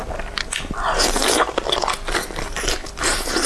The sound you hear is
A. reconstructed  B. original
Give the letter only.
B